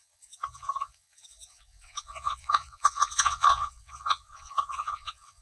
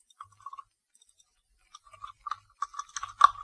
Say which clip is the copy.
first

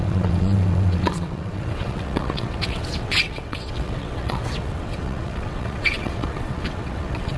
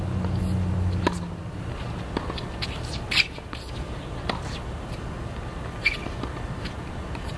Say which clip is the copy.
first